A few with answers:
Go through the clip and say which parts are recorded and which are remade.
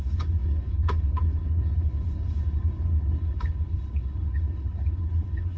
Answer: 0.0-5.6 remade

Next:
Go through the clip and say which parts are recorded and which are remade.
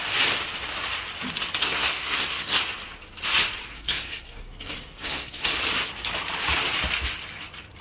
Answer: 0.0-1.6 recorded; 1.6-2.6 remade; 2.6-3.7 recorded; 3.7-5.6 remade; 5.6-7.8 recorded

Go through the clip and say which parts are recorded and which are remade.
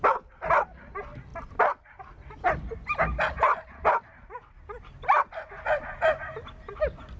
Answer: 0.0-4.2 recorded; 4.2-5.1 remade; 5.1-7.2 recorded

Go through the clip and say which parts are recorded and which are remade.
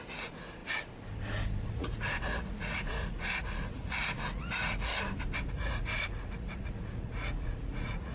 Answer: 0.0-0.6 remade; 0.6-1.6 recorded; 1.6-4.9 remade; 4.9-5.5 recorded; 5.5-8.1 remade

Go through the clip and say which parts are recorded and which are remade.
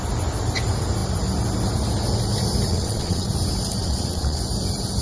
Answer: 0.0-2.7 recorded; 2.7-3.3 remade; 3.3-3.8 recorded; 3.8-4.4 remade; 4.4-5.0 recorded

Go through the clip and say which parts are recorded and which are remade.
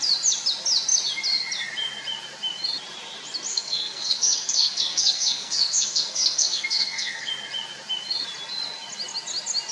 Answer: 0.0-3.5 recorded; 3.5-7.3 remade; 7.3-9.7 recorded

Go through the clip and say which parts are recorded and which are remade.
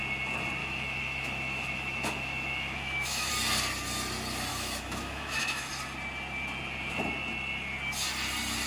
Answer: 0.0-0.6 recorded; 0.6-3.3 remade; 3.3-4.5 recorded; 4.5-5.7 remade; 5.7-8.7 recorded